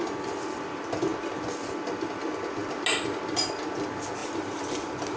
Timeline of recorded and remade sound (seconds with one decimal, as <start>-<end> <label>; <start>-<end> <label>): 0.0-4.2 recorded; 4.2-5.2 remade